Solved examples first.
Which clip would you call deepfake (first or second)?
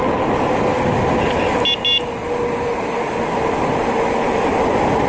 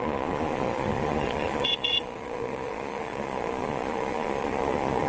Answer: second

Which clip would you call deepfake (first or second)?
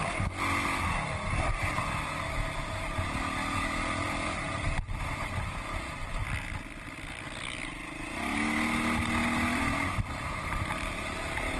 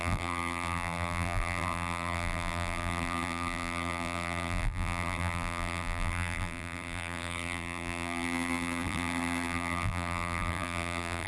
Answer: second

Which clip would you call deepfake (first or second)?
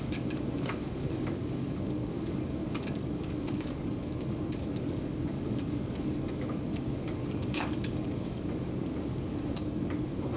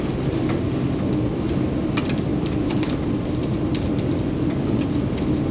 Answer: first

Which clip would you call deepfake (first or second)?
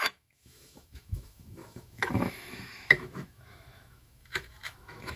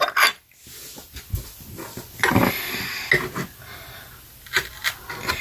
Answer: first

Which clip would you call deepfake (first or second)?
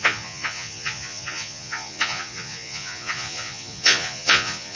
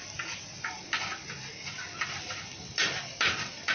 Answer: first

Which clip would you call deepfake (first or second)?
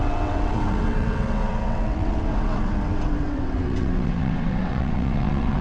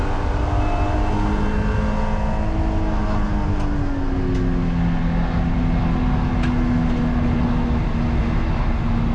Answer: first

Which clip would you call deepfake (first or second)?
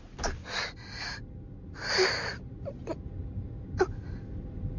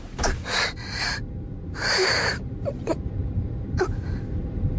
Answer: second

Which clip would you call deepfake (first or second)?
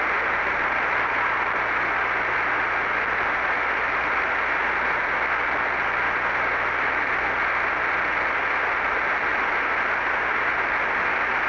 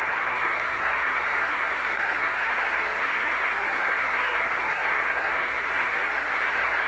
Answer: second